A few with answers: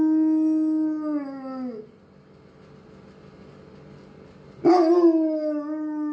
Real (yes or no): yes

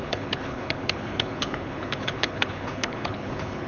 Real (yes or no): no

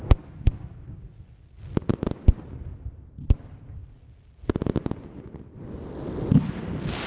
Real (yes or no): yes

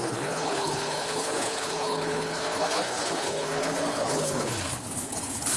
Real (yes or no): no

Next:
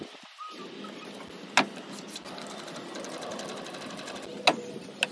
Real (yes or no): yes